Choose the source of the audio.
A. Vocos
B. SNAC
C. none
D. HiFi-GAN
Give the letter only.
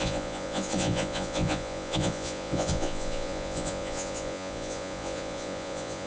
A